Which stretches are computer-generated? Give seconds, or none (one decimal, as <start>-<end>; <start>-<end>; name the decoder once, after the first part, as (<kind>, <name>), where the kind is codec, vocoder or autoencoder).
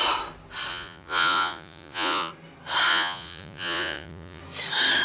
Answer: 0.7-2.3 (vocoder, Vocos); 2.9-4.4